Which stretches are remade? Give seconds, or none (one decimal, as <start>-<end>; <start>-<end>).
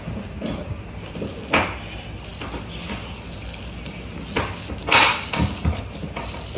none